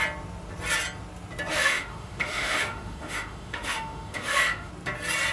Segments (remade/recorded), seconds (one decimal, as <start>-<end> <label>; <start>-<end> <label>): 0.0-1.5 recorded; 1.5-4.7 remade; 4.7-5.3 recorded